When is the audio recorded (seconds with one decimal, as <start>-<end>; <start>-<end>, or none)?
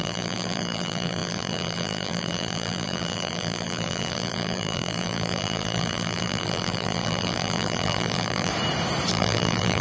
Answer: 8.5-9.1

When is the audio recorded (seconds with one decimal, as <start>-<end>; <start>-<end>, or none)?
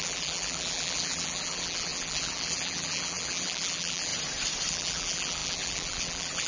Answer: 4.1-4.7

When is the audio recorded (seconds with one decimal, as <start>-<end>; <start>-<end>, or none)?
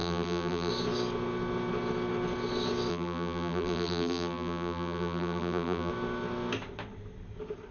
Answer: 0.7-2.9; 5.9-7.7